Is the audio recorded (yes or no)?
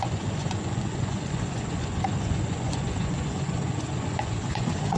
no